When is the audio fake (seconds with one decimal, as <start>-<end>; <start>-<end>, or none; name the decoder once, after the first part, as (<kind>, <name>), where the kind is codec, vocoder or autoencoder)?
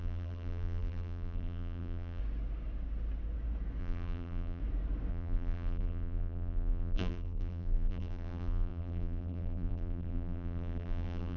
0.0-2.2 (vocoder, BigVGAN v2); 3.8-4.6; 5.1-11.4